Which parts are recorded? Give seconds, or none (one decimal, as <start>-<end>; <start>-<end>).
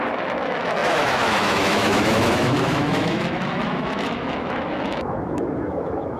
none